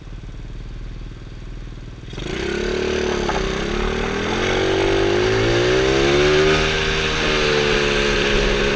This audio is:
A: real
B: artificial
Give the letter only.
A